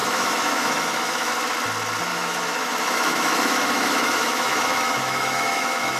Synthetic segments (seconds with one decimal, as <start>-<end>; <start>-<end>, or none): 0.0-1.3; 2.1-6.0